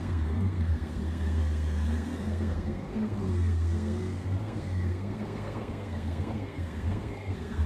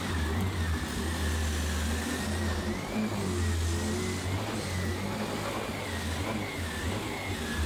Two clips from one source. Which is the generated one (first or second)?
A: first